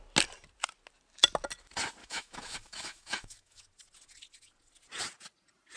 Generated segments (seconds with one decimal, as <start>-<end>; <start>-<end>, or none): 2.0-3.6